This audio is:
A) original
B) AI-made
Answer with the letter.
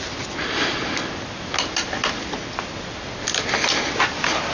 A